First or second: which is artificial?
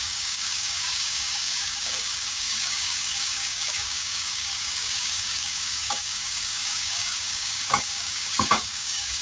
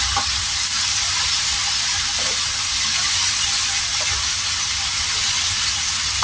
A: first